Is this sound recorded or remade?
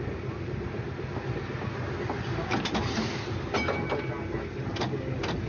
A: recorded